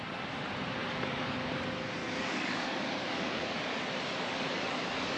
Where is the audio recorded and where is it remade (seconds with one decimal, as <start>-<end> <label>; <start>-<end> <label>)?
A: 0.0-0.8 recorded; 0.8-1.5 remade; 1.5-2.0 recorded; 2.0-5.2 remade